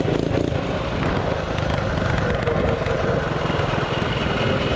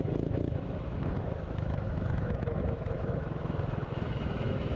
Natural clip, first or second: first